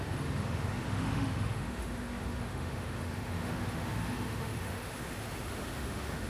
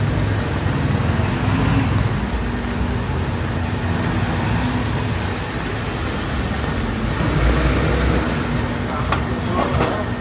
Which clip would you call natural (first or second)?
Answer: second